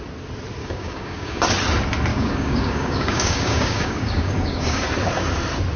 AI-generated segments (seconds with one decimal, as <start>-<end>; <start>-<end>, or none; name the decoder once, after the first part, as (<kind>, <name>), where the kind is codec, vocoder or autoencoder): 0.6-1.4 (codec, DAC); 2.1-4.8